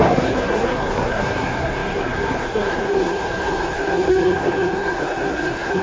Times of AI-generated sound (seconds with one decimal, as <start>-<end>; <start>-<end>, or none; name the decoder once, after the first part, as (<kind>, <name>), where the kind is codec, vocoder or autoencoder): 0.0-5.8 (codec, SNAC)